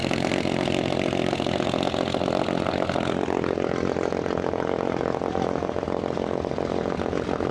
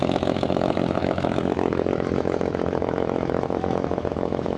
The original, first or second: first